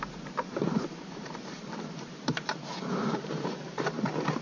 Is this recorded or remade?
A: remade